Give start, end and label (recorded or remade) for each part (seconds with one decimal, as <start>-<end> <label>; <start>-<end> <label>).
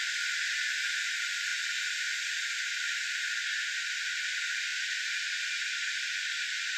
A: 0.0-6.8 recorded